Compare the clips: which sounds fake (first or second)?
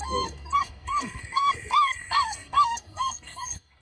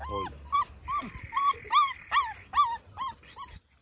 first